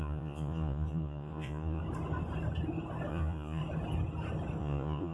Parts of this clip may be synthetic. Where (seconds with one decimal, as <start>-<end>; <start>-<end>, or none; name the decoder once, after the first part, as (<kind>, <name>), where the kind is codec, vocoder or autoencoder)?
0.0-1.8 (vocoder, Vocos); 3.1-3.6; 4.6-5.1

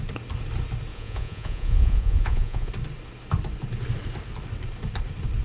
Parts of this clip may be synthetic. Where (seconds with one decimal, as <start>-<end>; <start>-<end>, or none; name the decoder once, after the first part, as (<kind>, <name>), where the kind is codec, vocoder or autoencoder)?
0.9-2.7 (vocoder, Vocos)

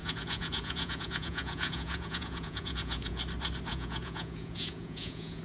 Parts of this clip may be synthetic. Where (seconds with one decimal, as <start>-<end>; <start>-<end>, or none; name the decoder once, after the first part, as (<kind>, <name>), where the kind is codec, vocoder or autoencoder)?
0.0-3.2 (vocoder, Vocos); 3.7-5.4

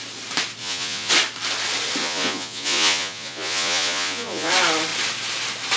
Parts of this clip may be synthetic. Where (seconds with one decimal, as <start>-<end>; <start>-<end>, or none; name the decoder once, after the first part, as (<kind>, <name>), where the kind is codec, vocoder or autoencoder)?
0.6-1.1 (vocoder, Vocos); 2.0-4.5

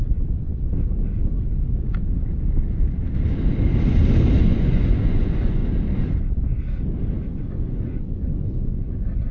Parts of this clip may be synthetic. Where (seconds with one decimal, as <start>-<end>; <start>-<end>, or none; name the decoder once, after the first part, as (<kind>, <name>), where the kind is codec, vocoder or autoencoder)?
0.0-0.5 (vocoder, Vocos); 4.4-5.6; 7.2-9.3

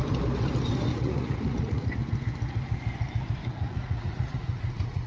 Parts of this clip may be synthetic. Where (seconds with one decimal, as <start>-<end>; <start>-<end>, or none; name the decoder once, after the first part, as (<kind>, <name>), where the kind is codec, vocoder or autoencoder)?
0.9-1.9 (vocoder, Vocos); 3.4-5.1

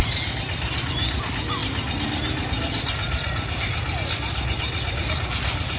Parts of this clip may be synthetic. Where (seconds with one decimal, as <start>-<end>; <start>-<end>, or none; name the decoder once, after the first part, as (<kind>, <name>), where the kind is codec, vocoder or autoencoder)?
none

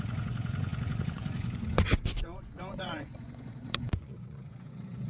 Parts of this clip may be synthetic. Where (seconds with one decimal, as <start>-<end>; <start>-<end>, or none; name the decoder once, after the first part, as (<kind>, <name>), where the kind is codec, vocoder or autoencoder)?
0.0-5.1 (vocoder, Vocos)